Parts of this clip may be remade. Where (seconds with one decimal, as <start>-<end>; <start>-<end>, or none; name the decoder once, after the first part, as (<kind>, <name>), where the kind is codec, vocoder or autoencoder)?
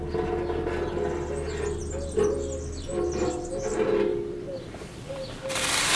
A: 4.1-5.1 (vocoder, BigVGAN v2)